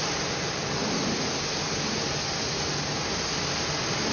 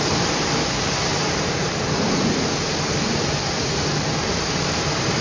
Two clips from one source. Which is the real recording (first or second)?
first